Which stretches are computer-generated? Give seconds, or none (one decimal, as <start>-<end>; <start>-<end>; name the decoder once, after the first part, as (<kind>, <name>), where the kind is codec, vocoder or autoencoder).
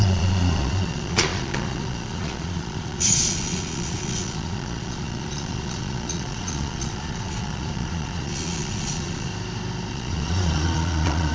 0.0-9.3 (vocoder, Vocos); 9.9-11.3